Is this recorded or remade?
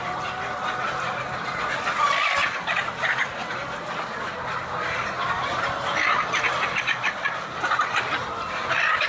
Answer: recorded